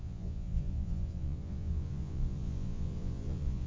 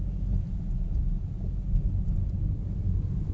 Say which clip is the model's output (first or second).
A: first